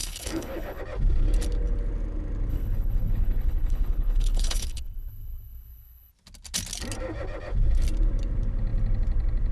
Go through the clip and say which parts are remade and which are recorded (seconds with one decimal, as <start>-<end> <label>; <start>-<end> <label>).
0.0-0.8 remade; 0.8-2.5 recorded; 2.5-6.1 remade; 6.1-9.5 recorded